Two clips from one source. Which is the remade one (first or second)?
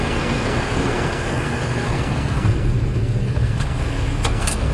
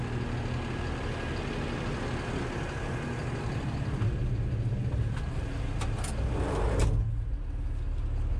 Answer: first